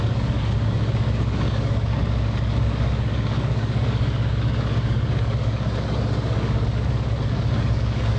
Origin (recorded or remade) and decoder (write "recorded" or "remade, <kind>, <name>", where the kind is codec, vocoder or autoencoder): remade, codec, DAC